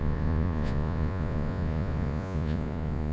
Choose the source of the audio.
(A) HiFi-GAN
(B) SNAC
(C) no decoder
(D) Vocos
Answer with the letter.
D